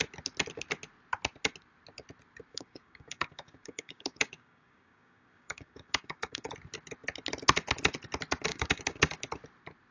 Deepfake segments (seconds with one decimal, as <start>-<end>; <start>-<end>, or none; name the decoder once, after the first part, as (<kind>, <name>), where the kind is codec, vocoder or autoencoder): 2.5-6.5 (codec, DAC); 8.5-9.2